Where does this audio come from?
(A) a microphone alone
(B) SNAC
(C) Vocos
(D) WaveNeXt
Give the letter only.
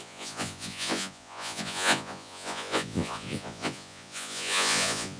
C